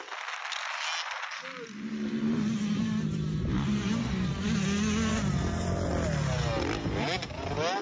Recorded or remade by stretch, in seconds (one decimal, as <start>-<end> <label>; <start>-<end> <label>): 0.0-1.9 recorded; 1.9-4.1 remade; 4.1-5.1 recorded; 5.1-5.9 remade; 5.9-7.8 recorded